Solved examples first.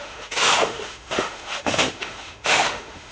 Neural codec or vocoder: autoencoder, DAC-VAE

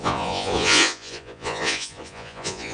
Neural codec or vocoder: vocoder, Vocos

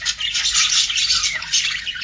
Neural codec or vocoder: none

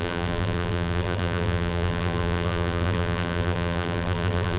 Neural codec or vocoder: vocoder, BigVGAN v2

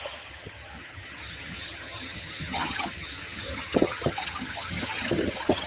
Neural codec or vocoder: vocoder, HiFi-GAN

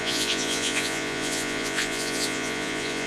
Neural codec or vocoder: vocoder, Vocos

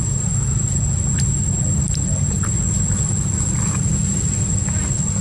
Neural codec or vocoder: none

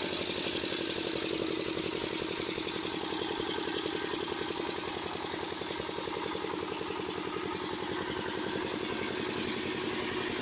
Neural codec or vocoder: none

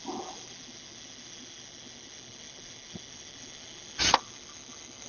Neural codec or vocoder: none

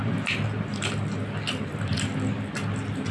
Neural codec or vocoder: none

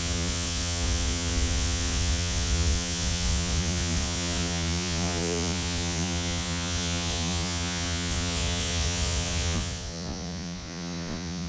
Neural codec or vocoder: vocoder, Vocos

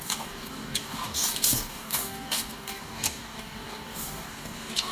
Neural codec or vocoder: codec, DAC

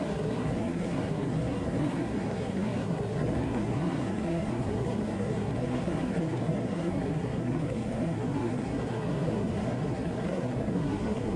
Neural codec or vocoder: codec, SNAC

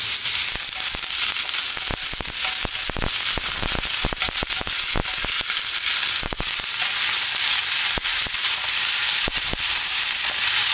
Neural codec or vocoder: none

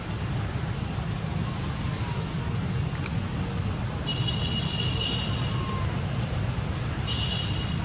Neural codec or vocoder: none